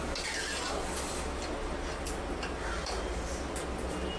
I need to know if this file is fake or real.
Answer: real